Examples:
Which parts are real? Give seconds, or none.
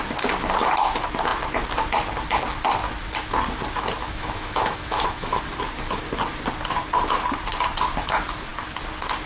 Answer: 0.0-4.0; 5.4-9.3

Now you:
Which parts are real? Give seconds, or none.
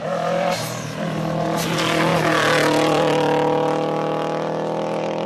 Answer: 0.0-5.3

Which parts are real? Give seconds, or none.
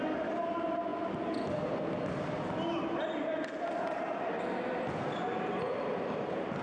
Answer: 0.0-6.6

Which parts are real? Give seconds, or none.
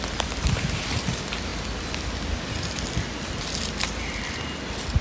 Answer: 0.0-5.0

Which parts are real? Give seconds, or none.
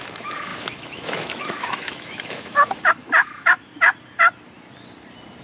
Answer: 3.7-5.4